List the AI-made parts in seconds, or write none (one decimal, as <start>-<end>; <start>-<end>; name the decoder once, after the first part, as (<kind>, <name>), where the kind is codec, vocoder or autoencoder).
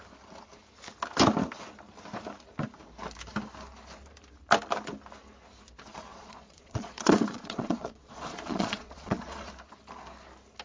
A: 6.1-9.5 (vocoder, Vocos)